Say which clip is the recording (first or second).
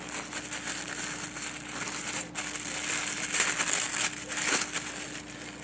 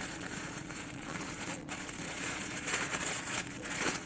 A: first